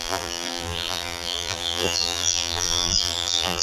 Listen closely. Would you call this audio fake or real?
fake